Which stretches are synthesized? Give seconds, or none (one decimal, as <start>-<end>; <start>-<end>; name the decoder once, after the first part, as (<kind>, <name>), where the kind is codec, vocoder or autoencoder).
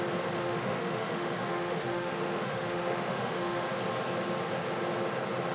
0.4-3.7 (autoencoder, DAC-VAE)